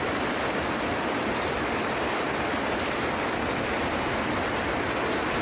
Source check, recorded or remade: recorded